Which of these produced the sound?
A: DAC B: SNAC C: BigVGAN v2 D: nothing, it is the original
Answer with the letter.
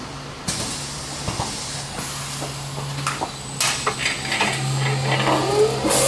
D